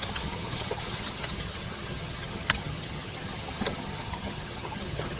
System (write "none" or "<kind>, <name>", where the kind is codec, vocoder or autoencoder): vocoder, HiFi-GAN